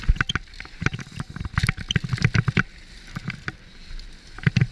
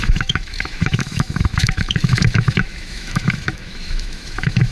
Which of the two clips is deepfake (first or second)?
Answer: second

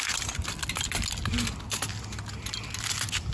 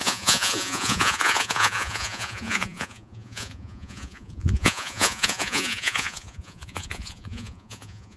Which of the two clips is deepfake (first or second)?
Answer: second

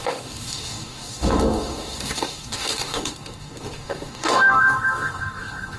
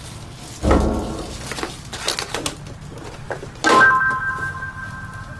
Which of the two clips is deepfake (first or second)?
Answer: first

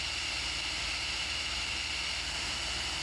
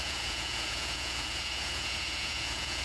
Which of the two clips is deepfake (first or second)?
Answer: second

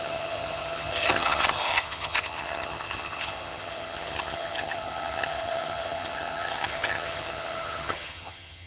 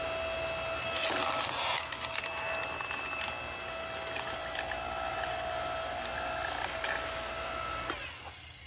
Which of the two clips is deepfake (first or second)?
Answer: first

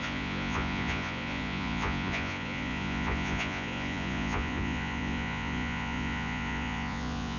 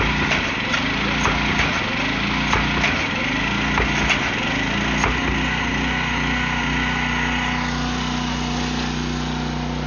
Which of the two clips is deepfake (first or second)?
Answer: first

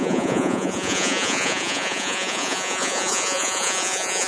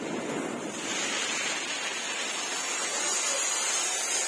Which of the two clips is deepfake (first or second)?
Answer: first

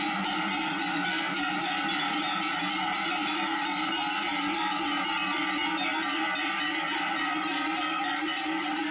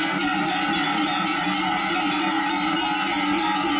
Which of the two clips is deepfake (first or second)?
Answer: first